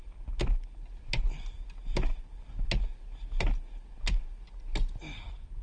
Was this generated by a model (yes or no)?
no